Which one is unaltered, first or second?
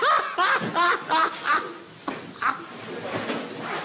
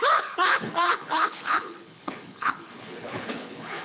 first